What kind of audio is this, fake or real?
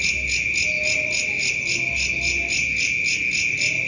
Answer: real